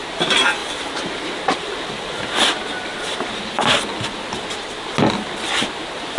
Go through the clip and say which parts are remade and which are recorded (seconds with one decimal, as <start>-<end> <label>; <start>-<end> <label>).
0.0-0.6 recorded; 0.6-2.2 remade; 2.2-2.9 recorded; 2.9-3.7 remade; 3.7-6.2 recorded